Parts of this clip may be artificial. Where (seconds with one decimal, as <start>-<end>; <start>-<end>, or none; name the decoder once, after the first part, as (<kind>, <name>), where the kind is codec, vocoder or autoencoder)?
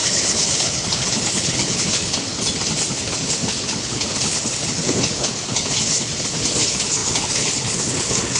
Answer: 0.0-2.3 (codec, HILCodec); 2.9-6.1; 6.6-8.4